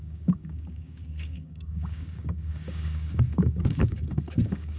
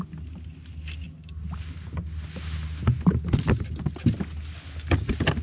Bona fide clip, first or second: second